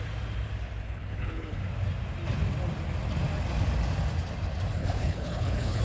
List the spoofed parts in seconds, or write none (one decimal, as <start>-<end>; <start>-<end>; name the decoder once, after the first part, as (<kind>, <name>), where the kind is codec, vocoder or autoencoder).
0.8-1.6 (codec, HILCodec); 4.8-5.8